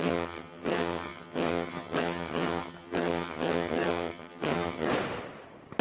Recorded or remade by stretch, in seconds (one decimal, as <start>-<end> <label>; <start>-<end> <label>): 0.0-4.9 remade; 4.9-5.8 recorded